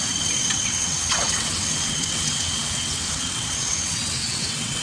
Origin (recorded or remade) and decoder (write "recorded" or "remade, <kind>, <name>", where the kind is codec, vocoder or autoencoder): remade, vocoder, WaveNeXt